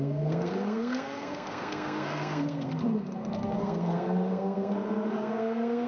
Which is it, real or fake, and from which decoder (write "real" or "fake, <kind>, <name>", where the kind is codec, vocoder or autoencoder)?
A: fake, codec, SNAC